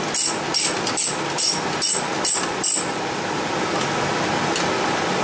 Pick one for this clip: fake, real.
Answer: real